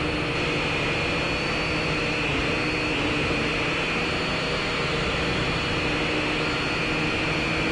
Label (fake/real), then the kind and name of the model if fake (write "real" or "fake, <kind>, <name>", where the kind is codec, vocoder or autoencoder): real